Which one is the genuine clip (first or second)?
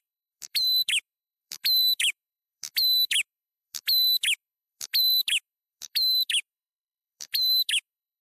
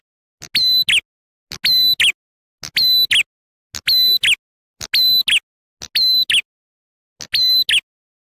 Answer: second